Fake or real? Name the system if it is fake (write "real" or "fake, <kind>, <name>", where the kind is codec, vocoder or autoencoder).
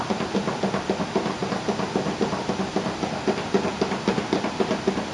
real